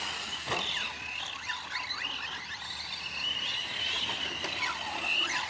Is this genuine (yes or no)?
yes